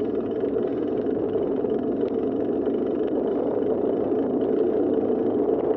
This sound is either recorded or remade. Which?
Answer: recorded